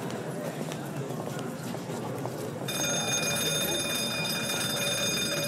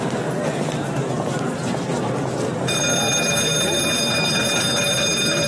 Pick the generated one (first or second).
first